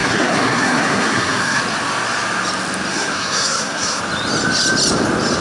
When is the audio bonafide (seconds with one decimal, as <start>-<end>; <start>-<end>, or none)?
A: 1.6-2.9; 4.0-5.4